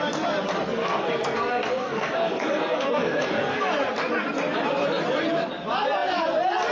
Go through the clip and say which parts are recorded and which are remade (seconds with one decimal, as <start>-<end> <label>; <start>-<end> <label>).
0.0-0.8 recorded; 0.8-3.7 remade; 3.7-6.7 recorded